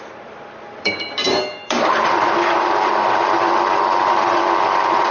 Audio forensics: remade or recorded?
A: remade